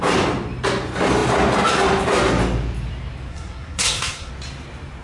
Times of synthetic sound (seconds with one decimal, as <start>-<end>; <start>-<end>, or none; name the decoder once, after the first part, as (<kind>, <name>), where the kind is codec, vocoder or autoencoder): 3.3-4.3 (codec, SNAC)